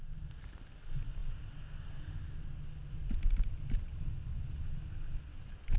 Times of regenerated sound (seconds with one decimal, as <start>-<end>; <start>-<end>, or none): none